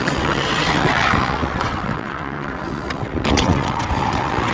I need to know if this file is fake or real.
fake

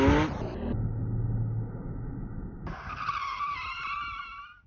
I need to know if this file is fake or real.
real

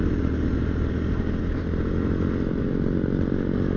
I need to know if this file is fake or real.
real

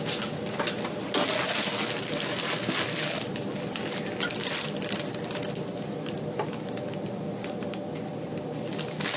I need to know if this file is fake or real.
real